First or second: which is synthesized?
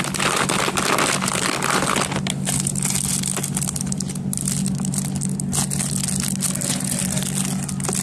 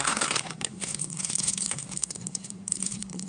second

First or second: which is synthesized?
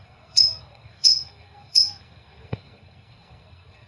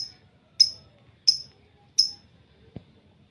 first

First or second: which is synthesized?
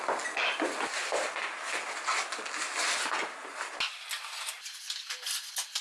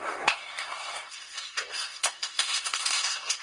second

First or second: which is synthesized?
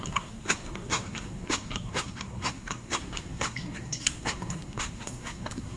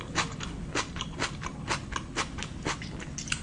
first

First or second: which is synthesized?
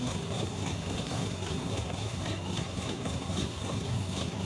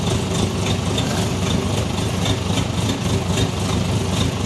first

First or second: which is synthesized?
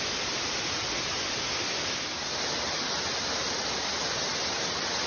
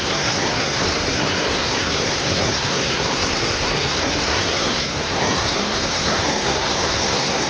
second